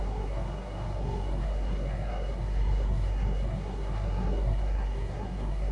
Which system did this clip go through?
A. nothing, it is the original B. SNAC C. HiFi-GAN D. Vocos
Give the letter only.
B